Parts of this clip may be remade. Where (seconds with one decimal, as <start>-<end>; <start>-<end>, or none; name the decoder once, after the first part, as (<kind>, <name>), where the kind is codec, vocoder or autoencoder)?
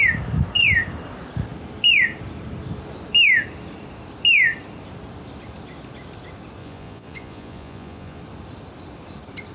6.6-8.2 (vocoder, Vocos)